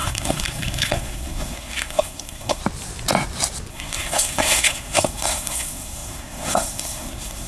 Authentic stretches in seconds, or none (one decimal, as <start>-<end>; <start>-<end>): 2.6-3.7